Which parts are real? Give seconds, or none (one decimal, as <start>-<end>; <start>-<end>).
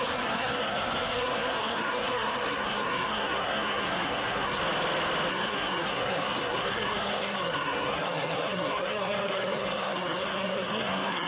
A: 4.6-5.3